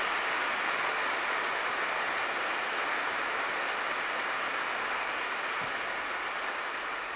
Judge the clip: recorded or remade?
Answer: recorded